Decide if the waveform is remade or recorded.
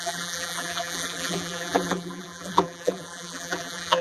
remade